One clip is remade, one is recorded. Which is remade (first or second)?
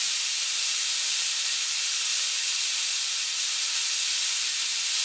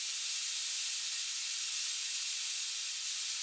first